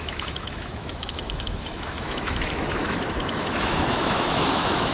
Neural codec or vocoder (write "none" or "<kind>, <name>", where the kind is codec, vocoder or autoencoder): autoencoder, DAC-VAE